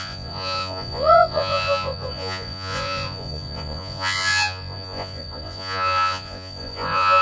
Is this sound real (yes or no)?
no